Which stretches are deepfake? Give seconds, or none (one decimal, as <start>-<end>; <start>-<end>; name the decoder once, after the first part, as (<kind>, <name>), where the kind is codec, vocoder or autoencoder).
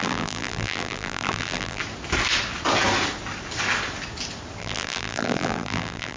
0.0-1.8 (vocoder, BigVGAN v2); 4.6-6.2